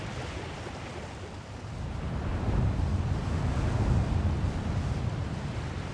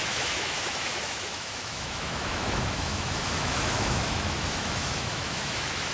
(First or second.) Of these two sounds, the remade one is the second